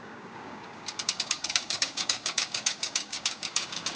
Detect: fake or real fake